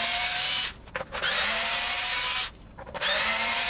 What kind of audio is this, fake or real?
fake